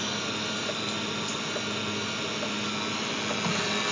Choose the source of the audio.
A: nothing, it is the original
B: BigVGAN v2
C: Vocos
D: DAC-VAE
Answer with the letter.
A